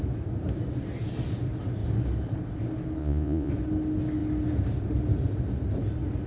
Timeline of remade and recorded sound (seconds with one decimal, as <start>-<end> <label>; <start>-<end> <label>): 0.0-3.0 recorded; 3.0-3.5 remade; 3.5-6.3 recorded